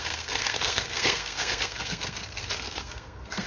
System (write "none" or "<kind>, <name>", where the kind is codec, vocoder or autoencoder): codec, SNAC